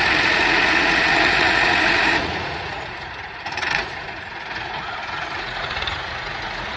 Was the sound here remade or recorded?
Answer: remade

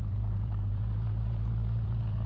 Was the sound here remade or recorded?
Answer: remade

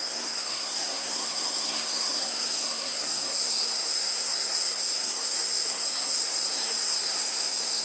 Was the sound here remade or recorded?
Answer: remade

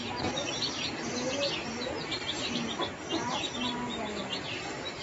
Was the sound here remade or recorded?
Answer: recorded